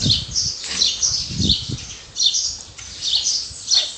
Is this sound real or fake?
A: real